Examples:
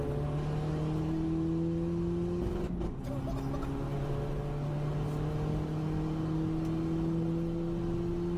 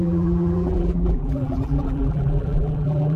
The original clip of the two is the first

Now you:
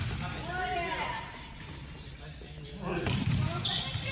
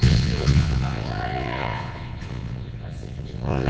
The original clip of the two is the first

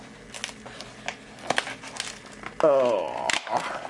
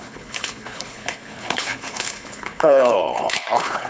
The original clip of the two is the first